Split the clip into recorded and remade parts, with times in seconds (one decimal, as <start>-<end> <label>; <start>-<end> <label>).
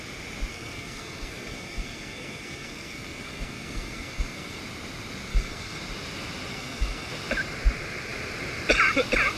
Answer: 0.0-0.5 recorded; 0.5-4.6 remade; 4.6-5.3 recorded; 5.3-5.8 remade; 5.8-6.5 recorded; 6.5-7.1 remade; 7.1-9.4 recorded